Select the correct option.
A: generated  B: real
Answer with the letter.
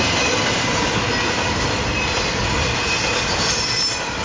B